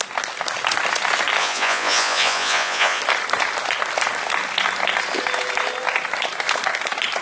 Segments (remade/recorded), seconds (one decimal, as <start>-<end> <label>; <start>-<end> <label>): 0.0-1.4 recorded; 1.4-3.0 remade; 3.0-7.2 recorded